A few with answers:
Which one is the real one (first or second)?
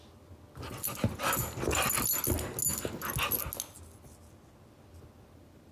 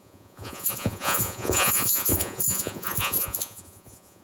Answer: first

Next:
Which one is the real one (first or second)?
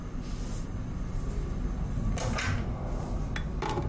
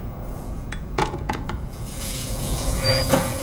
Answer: first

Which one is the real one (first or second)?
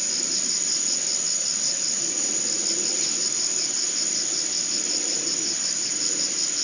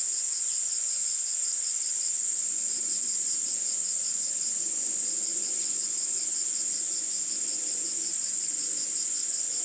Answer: first